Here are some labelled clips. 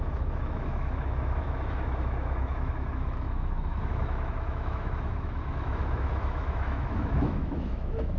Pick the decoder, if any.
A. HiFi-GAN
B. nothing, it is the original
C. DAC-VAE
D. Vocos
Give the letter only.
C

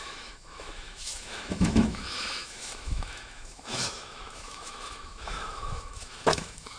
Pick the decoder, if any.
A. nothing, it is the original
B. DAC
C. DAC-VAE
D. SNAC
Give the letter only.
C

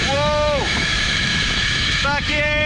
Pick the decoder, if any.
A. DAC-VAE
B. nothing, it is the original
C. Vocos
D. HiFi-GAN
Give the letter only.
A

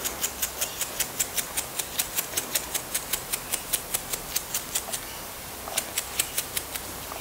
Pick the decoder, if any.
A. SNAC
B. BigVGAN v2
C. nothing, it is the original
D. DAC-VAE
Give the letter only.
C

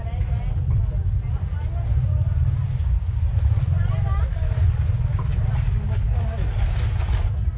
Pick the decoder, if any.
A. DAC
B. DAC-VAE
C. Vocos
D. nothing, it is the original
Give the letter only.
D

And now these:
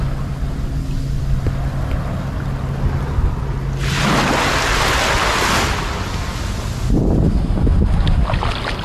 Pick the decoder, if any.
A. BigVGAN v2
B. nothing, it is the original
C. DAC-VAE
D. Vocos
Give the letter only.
B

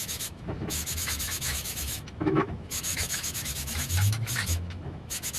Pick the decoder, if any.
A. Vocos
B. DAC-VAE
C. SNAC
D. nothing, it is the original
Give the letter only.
B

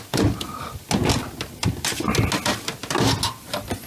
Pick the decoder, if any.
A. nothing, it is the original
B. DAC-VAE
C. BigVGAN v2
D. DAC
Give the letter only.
A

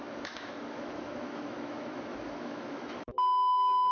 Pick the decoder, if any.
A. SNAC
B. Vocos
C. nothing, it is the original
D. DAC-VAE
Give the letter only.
D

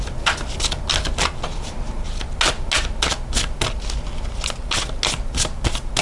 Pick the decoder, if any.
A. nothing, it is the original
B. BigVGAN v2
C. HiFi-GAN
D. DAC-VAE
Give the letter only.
A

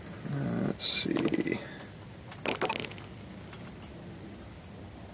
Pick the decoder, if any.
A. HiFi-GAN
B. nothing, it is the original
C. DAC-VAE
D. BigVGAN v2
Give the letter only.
B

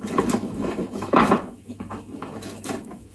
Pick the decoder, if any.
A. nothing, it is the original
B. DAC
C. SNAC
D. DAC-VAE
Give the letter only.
D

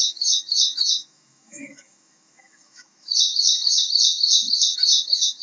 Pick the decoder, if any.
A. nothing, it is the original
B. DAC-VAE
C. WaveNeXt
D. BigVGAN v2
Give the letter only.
B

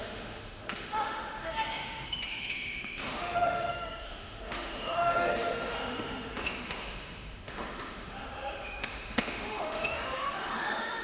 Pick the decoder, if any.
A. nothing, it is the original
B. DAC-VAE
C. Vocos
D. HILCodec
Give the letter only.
B